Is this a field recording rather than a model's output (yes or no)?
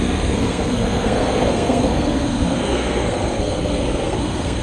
no